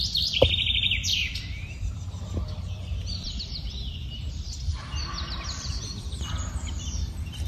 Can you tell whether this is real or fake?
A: fake